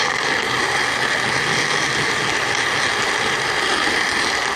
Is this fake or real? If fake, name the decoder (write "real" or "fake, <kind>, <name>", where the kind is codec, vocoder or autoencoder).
real